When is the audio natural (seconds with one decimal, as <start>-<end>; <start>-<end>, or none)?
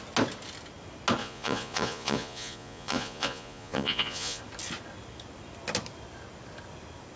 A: 0.0-1.2; 4.4-7.2